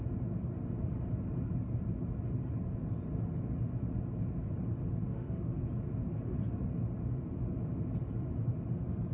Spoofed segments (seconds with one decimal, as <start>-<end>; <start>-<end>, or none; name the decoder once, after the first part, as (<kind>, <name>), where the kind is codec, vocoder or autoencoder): 5.1-5.6 (autoencoder, DAC-VAE)